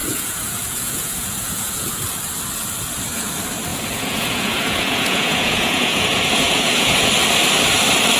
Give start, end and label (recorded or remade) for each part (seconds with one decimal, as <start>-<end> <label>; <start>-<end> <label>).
0.0-2.0 remade; 2.0-3.7 recorded; 3.7-7.1 remade; 7.1-8.2 recorded